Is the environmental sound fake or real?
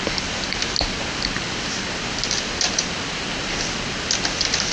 real